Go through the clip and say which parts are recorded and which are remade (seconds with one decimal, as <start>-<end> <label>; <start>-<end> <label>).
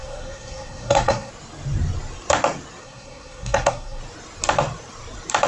0.0-1.3 remade; 1.3-2.8 recorded; 2.8-4.0 remade; 4.0-5.5 recorded